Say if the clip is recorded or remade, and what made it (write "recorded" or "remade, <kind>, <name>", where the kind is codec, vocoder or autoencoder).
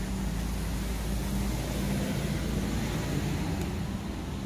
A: recorded